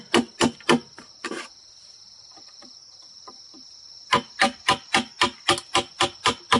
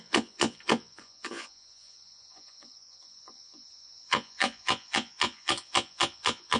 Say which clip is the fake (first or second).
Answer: second